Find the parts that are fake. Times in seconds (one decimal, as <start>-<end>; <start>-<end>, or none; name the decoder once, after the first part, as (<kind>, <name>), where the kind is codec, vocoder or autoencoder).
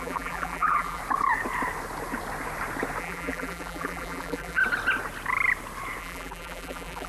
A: 0.0-1.0 (vocoder, BigVGAN v2); 3.0-4.6; 6.0-7.1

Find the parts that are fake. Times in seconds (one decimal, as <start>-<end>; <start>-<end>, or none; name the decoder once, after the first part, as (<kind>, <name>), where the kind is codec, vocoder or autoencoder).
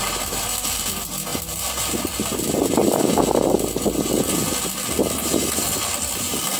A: none